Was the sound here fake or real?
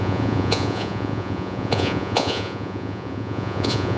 fake